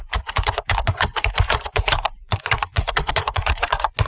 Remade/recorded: remade